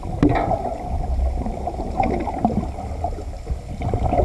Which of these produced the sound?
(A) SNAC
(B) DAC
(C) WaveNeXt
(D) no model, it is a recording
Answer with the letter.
D